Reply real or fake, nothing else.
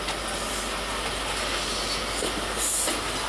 real